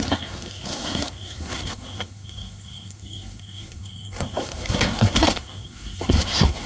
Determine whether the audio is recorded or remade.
remade